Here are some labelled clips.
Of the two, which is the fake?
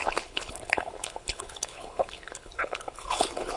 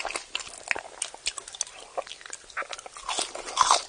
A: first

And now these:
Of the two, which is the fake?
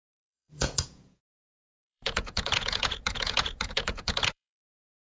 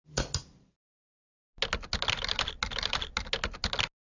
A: first